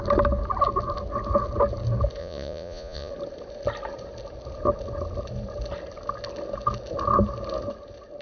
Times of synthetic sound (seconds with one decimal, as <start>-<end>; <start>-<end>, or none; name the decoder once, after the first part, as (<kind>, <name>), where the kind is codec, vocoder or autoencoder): 2.2-3.1 (vocoder, Vocos)